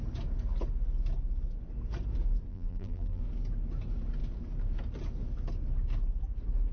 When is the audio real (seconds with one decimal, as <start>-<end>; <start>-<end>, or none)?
0.0-2.5; 3.2-6.7